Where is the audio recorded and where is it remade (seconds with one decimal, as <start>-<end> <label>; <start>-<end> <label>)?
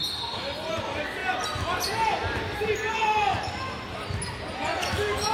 0.0-5.3 recorded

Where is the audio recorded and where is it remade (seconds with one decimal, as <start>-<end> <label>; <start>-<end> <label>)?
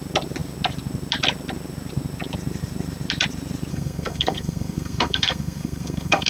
0.0-3.7 recorded; 3.7-6.3 remade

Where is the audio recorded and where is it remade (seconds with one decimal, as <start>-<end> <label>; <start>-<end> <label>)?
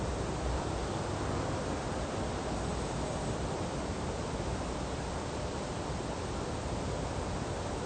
0.0-7.9 recorded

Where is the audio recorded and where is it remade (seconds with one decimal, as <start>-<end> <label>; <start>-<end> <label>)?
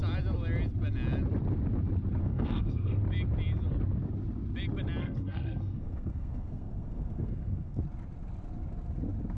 0.0-2.2 recorded; 2.2-3.0 remade; 3.0-5.0 recorded; 5.0-7.8 remade; 7.8-9.4 recorded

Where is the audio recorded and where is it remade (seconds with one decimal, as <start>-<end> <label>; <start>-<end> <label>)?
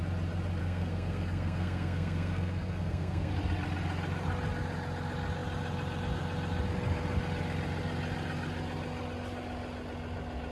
0.0-0.6 recorded; 0.6-3.3 remade; 3.3-10.5 recorded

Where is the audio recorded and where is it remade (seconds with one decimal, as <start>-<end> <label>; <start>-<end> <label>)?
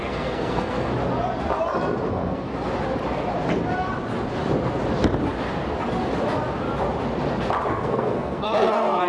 0.0-0.9 remade; 0.9-2.1 recorded; 2.1-2.5 remade; 2.5-7.7 recorded; 7.7-9.1 remade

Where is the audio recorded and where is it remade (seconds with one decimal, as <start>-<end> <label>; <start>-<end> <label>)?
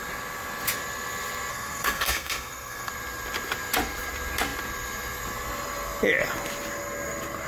0.0-1.5 recorded; 1.5-2.9 remade; 2.9-7.5 recorded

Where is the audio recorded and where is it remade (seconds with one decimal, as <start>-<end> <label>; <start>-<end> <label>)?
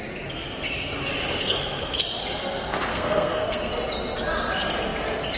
0.0-1.3 recorded; 1.3-2.0 remade; 2.0-2.9 recorded; 2.9-3.7 remade; 3.7-5.4 recorded